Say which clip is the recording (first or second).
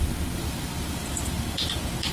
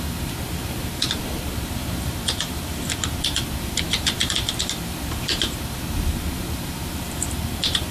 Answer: first